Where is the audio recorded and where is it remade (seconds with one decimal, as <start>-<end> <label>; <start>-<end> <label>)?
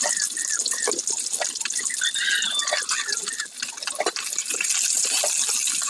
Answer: 0.0-5.9 recorded